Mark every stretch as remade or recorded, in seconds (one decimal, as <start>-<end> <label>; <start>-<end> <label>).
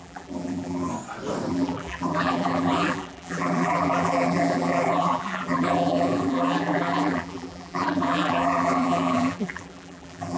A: 0.0-0.9 remade; 0.9-1.5 recorded; 1.5-10.4 remade